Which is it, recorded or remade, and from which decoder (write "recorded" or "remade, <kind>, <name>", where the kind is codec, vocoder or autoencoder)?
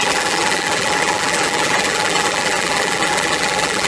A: remade, vocoder, BigVGAN v2